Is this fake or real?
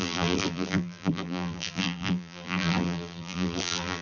fake